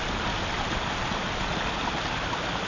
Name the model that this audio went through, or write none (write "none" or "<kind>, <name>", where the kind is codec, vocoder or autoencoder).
none